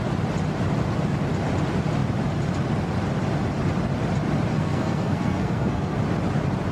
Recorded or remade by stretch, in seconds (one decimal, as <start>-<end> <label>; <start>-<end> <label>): 0.0-4.5 recorded; 4.5-6.0 remade; 6.0-6.7 recorded